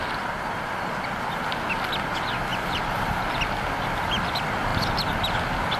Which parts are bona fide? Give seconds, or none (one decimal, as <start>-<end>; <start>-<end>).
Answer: 0.0-2.5; 3.1-5.8